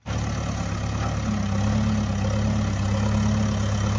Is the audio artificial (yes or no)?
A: no